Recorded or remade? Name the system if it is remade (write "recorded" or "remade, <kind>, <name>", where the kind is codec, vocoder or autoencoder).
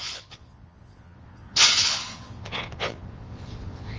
remade, vocoder, Vocos